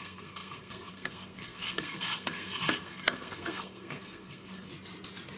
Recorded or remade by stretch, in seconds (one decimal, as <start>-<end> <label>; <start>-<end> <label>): 0.0-4.7 remade; 4.7-5.4 recorded